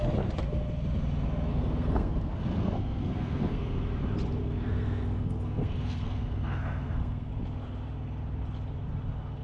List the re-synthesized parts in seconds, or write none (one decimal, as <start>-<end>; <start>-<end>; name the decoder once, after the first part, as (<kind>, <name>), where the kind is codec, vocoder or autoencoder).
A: 1.5-4.0 (codec, SNAC); 4.4-7.3